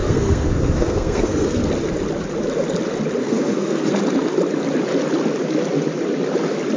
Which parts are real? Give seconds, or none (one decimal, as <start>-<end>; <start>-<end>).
1.7-3.2; 3.9-6.8